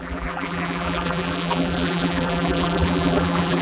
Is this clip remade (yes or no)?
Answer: yes